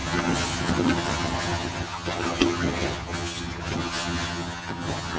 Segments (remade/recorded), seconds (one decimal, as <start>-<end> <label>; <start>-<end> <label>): 0.0-5.2 remade